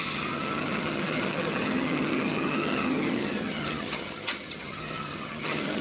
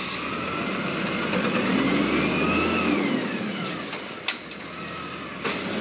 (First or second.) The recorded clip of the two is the second